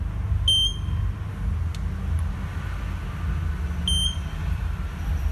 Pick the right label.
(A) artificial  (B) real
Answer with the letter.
B